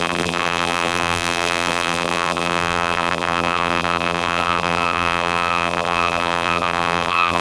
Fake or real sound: fake